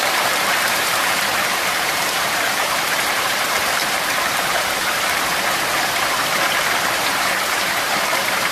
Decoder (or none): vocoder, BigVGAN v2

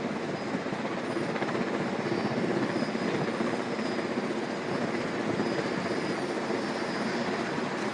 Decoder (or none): none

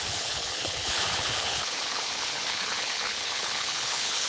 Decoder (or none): codec, HILCodec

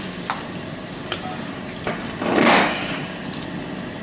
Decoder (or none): none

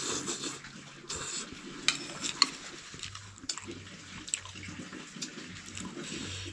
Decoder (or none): none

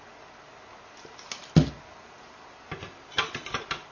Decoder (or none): none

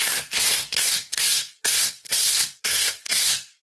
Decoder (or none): codec, SNAC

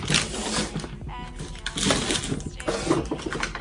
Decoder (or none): none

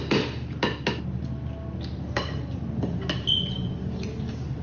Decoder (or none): none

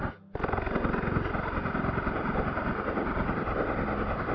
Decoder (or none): none